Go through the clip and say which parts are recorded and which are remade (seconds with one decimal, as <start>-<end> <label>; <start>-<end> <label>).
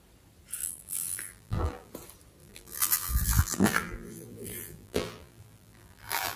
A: 0.0-0.6 recorded; 0.6-1.9 remade; 1.9-2.4 recorded; 2.4-6.4 remade